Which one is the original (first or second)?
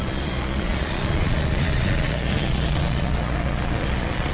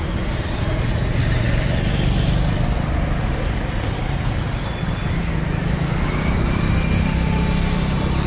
second